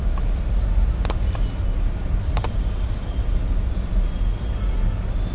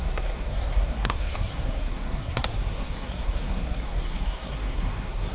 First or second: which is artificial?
second